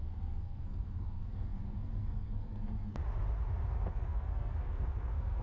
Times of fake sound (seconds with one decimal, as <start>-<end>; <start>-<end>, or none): 0.0-3.0; 3.9-5.4